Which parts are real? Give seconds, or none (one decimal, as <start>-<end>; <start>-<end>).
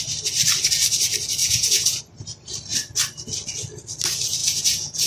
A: 0.0-1.4; 2.0-4.4